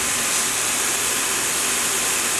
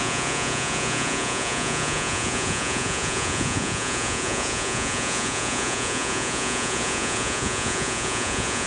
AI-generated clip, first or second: second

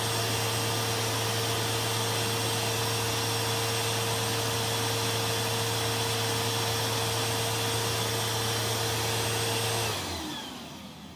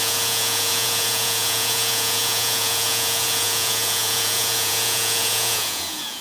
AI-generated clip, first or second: second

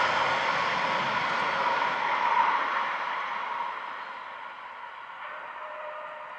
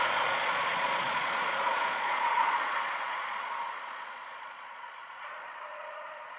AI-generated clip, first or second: second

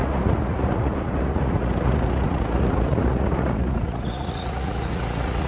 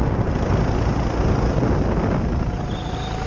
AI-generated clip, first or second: first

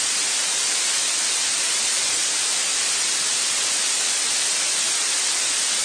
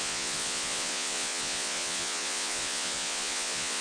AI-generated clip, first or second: second